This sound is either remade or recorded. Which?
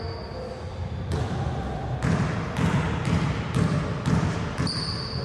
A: recorded